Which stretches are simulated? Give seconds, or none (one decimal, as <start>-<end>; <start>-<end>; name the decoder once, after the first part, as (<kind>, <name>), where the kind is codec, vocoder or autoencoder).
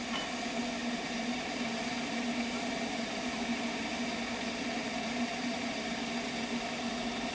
0.8-3.9 (vocoder, BigVGAN v2); 4.8-5.9